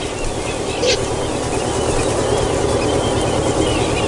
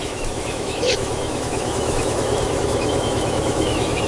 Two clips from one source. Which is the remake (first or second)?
second